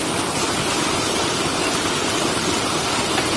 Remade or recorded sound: recorded